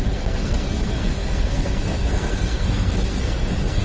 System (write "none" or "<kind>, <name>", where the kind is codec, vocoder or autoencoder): codec, SNAC